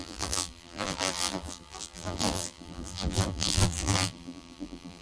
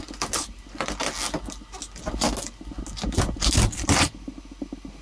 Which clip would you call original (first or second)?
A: second